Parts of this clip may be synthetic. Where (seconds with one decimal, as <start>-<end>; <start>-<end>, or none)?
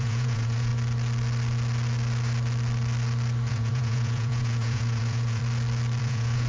0.0-0.7; 3.5-5.4; 6.0-6.5